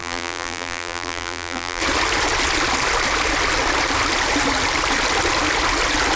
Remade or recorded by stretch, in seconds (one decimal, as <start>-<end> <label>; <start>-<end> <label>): 0.0-1.8 remade; 1.8-6.2 recorded